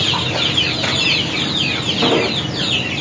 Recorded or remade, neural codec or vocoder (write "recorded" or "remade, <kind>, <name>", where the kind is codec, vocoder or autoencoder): recorded